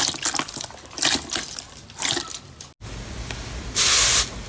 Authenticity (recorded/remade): recorded